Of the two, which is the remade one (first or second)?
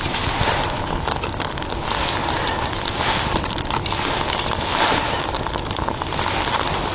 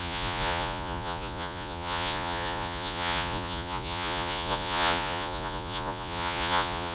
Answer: second